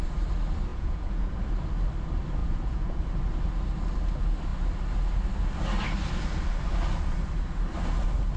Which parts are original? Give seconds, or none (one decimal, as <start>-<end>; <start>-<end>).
0.0-0.7; 1.3-2.4; 3.0-8.4